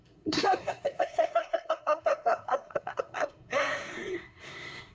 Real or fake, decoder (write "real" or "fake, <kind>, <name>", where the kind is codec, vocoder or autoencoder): fake, codec, SNAC